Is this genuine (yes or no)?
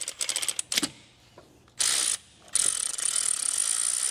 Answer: yes